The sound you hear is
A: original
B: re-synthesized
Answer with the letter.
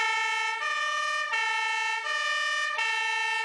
A